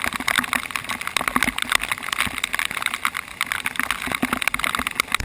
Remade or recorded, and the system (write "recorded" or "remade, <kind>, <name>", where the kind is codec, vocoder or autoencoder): recorded